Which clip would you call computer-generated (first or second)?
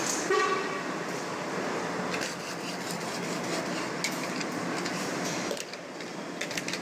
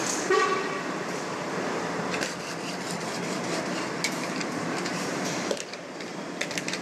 second